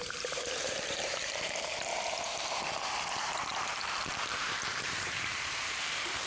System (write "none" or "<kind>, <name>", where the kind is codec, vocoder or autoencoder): vocoder, BigVGAN v2